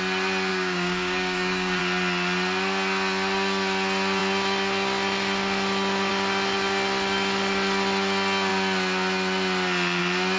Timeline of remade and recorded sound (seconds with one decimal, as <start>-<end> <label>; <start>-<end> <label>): 0.0-0.5 recorded; 0.5-1.8 remade; 1.8-10.4 recorded